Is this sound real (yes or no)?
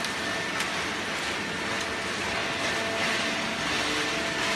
yes